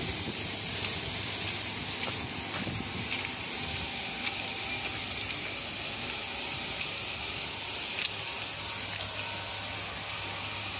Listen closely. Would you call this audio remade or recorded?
recorded